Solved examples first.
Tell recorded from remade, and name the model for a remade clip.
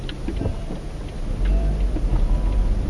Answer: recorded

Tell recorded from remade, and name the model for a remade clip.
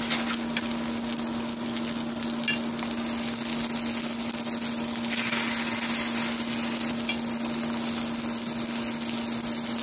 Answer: recorded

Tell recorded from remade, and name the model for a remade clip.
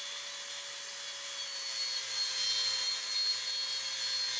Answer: recorded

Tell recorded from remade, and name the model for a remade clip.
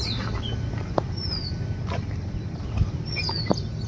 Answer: recorded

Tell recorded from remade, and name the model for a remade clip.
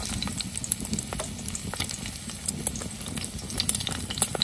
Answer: recorded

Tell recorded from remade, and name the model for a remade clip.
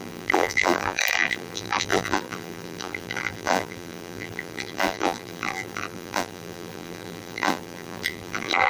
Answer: remade, vocoder, BigVGAN v2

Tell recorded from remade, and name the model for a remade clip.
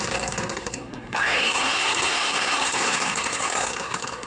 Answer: remade, codec, SNAC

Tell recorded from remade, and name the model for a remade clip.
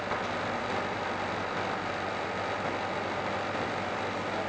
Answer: recorded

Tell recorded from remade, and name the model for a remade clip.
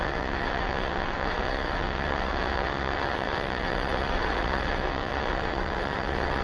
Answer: remade, vocoder, WaveNeXt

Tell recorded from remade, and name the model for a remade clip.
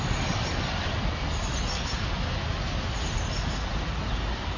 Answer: recorded